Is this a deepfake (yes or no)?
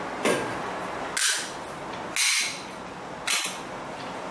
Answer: no